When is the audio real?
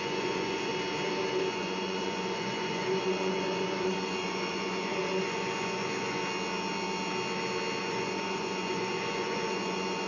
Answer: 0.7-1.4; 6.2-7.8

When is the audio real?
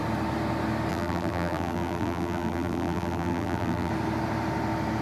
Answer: 0.0-0.9; 3.9-5.0